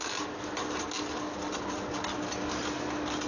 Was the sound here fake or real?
real